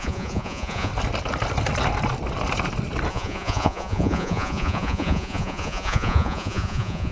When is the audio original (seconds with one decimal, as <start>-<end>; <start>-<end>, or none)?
0.9-3.1